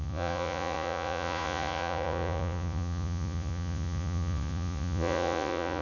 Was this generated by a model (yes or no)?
yes